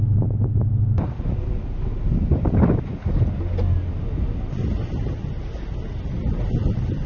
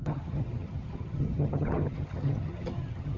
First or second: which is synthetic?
second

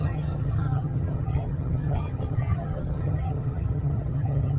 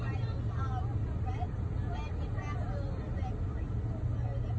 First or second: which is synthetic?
first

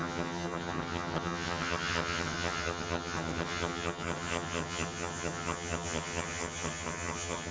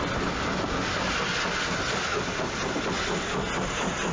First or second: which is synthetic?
first